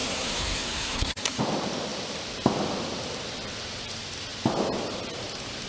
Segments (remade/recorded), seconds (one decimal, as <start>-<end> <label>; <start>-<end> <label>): 0.0-1.4 remade; 1.4-5.7 recorded